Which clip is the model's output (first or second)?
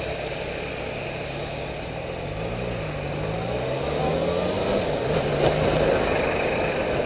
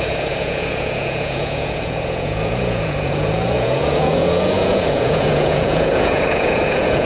second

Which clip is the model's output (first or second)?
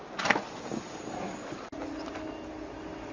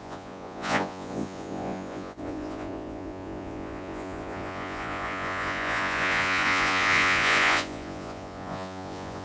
second